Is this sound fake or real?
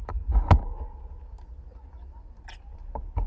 real